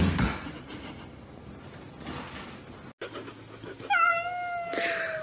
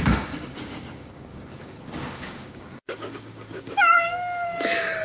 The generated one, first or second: second